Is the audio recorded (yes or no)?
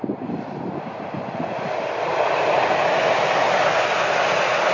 yes